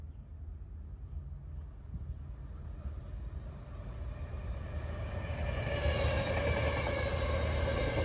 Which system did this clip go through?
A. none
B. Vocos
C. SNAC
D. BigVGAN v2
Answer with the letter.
A